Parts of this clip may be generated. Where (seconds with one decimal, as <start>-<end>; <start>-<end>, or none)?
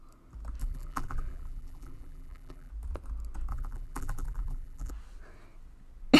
0.6-2.7; 3.5-4.9